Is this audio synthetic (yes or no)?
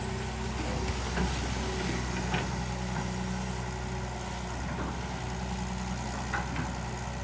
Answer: no